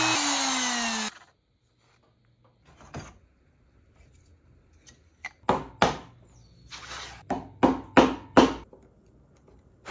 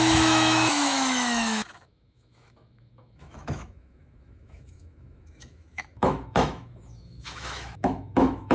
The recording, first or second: first